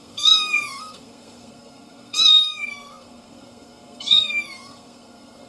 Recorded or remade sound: remade